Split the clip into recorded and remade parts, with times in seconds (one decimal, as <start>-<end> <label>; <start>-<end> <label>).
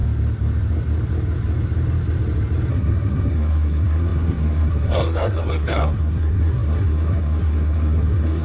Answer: 0.0-2.7 recorded; 2.7-8.4 remade